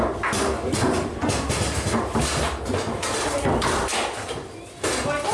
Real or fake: real